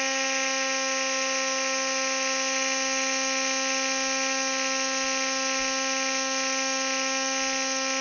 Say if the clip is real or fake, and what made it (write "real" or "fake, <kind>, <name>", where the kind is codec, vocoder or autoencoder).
real